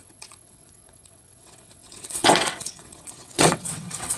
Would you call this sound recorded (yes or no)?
no